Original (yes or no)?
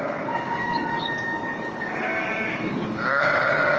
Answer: no